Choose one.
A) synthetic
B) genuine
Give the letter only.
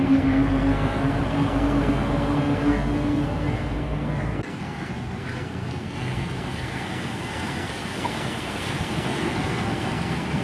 A